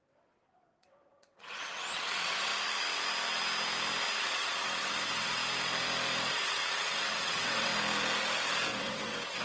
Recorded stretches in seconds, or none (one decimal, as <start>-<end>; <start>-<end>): 2.5-4.2; 5.4-6.3; 7.7-8.8